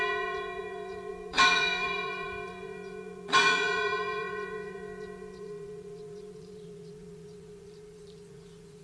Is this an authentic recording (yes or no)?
no